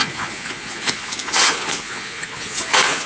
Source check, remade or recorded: remade